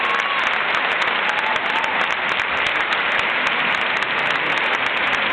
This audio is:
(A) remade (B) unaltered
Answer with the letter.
B